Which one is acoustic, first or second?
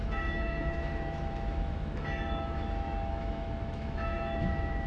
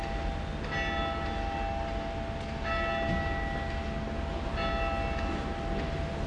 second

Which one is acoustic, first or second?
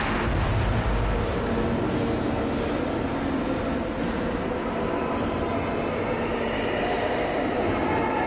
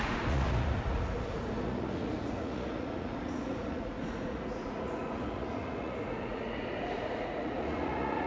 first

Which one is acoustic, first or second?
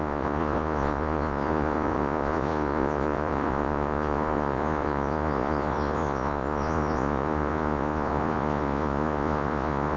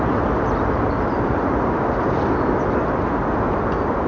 second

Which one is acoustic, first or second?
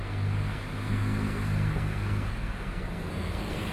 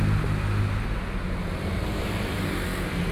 second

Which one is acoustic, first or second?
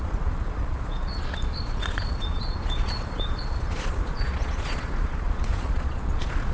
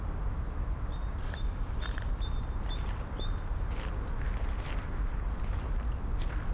second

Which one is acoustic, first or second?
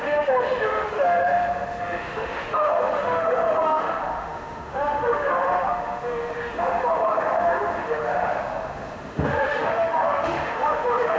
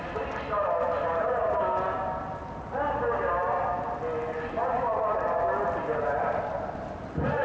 second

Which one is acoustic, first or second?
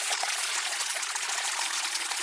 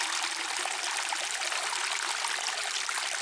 second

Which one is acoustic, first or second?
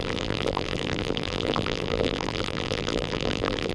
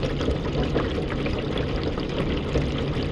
second